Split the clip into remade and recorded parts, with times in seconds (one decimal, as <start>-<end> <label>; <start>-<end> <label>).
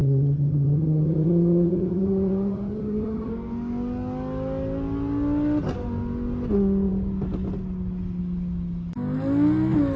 0.0-3.3 remade; 3.3-10.0 recorded